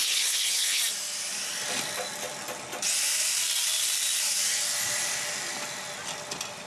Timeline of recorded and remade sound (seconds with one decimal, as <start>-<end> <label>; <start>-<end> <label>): 0.0-0.8 remade; 0.8-6.7 recorded